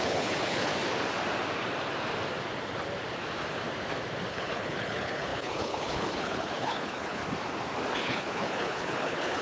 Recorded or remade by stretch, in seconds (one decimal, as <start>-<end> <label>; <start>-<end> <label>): 0.0-0.7 remade; 0.7-4.3 recorded; 4.3-7.2 remade; 7.2-8.0 recorded; 8.0-9.4 remade